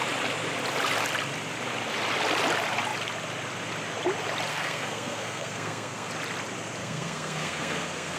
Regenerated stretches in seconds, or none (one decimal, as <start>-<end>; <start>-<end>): 4.5-6.1; 6.8-8.2